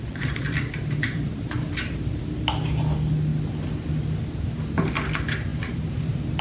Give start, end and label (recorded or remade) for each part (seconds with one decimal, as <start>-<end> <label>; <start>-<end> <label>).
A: 0.0-2.2 remade; 2.2-5.5 recorded; 5.5-6.4 remade